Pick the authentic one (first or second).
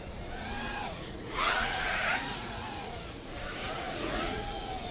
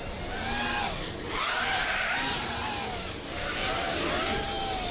second